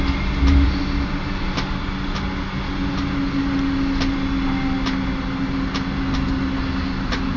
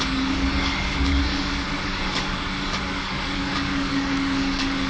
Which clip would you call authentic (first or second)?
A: first